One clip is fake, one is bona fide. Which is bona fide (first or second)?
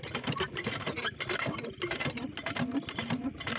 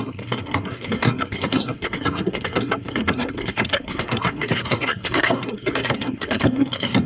first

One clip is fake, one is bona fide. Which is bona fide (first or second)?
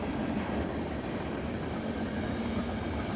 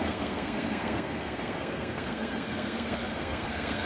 first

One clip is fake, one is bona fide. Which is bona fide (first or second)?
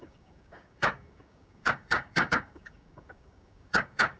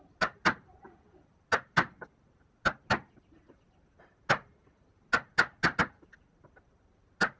second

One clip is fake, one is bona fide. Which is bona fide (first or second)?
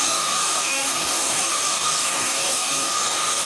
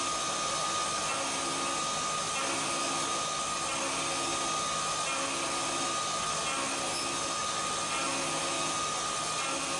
second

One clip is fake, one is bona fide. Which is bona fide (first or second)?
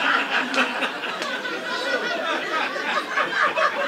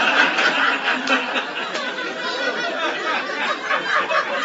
second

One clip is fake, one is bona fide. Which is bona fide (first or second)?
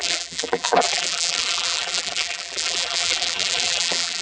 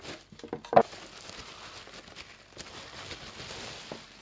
second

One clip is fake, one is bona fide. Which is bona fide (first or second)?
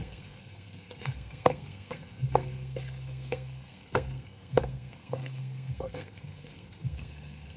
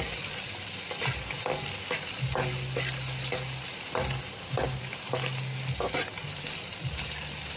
second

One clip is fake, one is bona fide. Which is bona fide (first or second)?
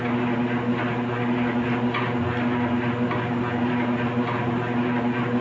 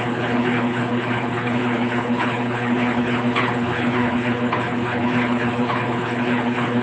first